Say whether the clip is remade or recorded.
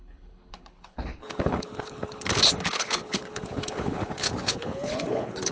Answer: remade